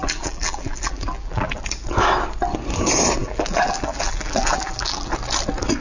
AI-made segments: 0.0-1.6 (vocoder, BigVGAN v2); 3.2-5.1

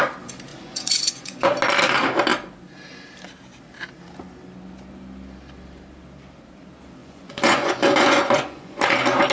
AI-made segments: 0.5-1.5 (vocoder, Vocos); 7.0-8.8

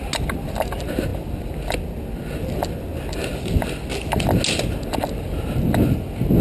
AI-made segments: none